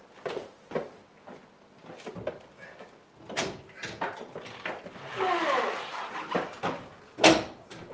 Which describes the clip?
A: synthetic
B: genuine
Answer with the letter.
B